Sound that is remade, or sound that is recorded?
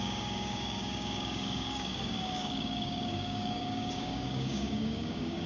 remade